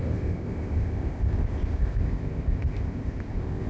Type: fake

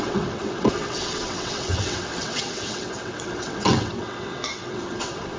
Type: fake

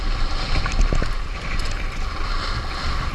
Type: real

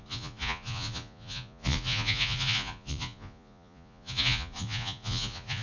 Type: fake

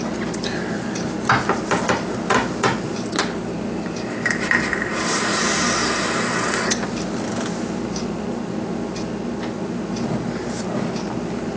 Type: real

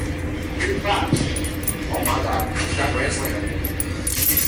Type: real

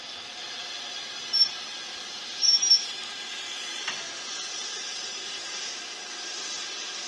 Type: real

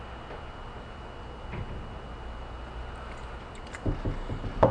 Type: real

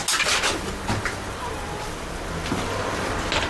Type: real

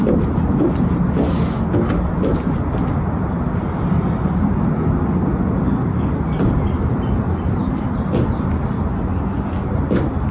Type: real